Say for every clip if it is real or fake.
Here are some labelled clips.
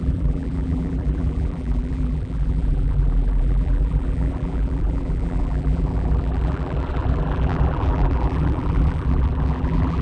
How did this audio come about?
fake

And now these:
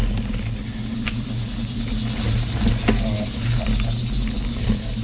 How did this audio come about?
real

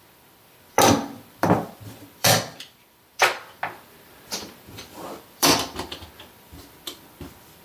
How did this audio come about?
fake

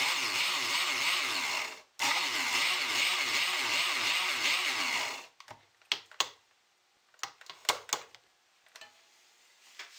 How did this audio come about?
real